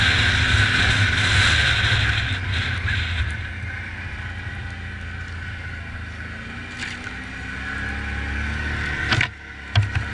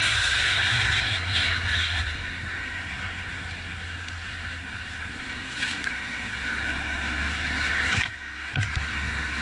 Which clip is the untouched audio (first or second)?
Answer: first